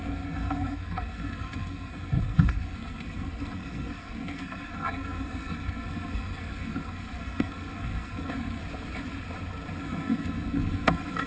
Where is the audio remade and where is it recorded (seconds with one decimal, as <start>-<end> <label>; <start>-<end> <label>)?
0.0-8.6 remade; 8.6-9.8 recorded; 9.8-11.3 remade